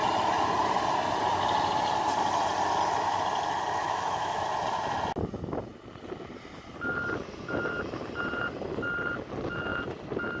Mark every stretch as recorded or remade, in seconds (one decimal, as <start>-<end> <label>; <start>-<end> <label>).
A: 0.0-3.8 recorded; 3.8-4.5 remade; 4.5-10.4 recorded